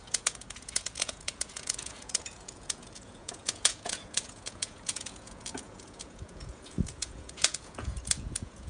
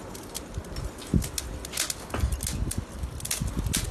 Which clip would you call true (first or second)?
second